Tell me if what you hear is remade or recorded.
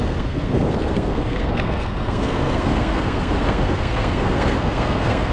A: remade